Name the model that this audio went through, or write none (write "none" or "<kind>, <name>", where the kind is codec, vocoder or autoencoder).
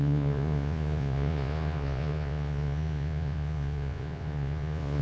vocoder, Vocos